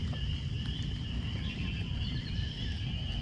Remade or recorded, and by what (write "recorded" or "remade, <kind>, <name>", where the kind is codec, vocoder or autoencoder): recorded